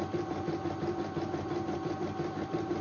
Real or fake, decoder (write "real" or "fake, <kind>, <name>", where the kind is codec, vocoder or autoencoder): fake, vocoder, BigVGAN v2